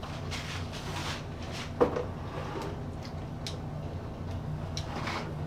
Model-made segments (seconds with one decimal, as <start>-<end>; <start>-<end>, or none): 0.0-1.0; 4.3-5.5